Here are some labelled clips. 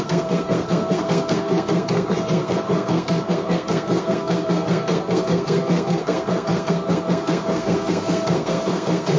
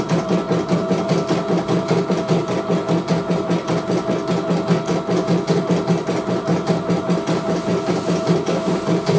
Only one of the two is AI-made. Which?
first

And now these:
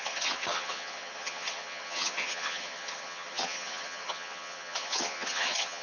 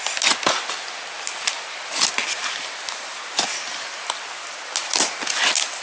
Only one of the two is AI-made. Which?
first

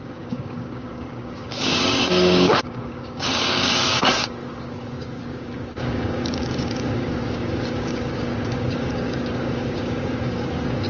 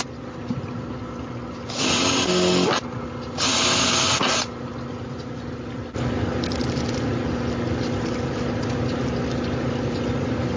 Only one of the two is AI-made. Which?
first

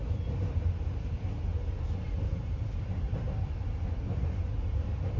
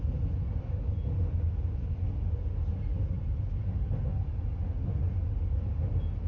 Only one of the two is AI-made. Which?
first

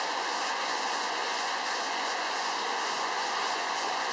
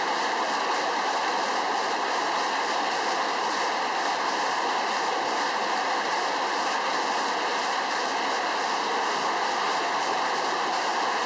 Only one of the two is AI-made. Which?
first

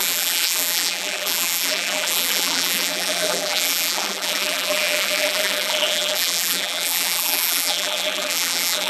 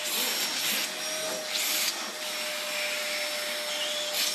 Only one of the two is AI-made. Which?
first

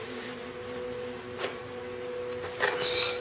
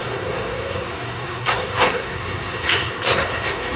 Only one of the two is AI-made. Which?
second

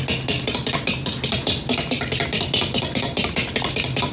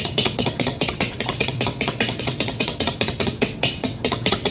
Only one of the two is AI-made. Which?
second